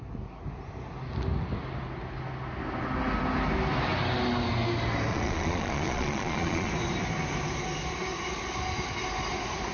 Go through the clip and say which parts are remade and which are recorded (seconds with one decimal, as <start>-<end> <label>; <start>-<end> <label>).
0.0-5.1 recorded; 5.1-6.7 remade; 6.7-9.7 recorded